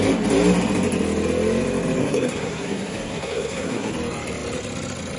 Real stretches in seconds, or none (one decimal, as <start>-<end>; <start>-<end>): 0.0-2.0; 3.9-5.2